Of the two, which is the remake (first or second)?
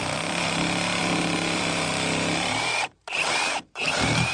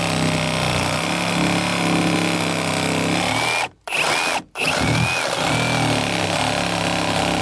first